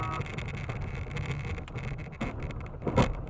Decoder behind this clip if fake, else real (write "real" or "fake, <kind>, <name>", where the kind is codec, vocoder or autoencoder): real